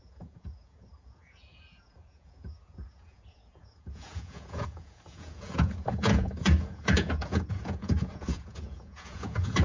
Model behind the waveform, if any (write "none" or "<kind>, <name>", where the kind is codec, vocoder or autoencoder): vocoder, Vocos